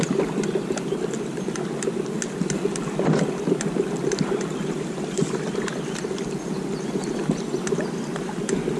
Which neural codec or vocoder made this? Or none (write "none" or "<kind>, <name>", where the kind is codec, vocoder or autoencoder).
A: none